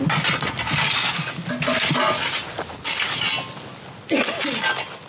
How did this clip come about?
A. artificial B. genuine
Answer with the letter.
B